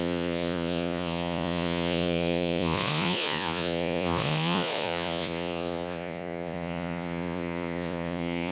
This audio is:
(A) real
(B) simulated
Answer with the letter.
B